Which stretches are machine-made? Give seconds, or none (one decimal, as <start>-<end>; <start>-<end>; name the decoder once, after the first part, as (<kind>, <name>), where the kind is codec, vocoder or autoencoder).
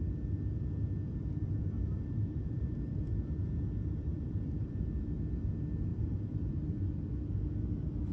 1.8-3.1 (vocoder, BigVGAN v2); 4.0-4.7; 5.9-6.6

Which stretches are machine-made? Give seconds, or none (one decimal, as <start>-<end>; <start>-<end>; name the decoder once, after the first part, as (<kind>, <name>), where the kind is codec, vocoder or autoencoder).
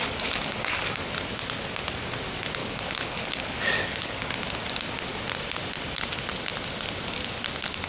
0.0-1.0 (codec, DAC); 2.6-4.3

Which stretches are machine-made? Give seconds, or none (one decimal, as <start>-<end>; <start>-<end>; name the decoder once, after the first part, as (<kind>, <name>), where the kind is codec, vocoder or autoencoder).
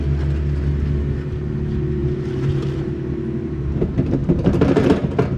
2.0-4.9 (vocoder, BigVGAN v2)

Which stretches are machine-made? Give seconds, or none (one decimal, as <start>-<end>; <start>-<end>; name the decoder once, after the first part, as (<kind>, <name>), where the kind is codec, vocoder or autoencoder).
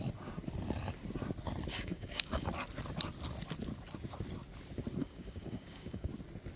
1.7-2.5 (codec, DAC); 5.0-6.1